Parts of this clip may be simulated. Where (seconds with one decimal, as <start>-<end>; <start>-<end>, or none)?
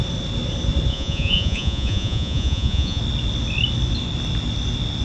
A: 0.9-3.0